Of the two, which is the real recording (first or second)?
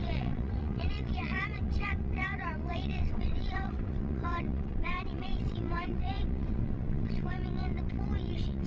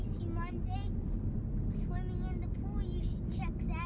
second